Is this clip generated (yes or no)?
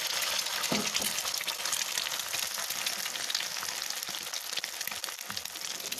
no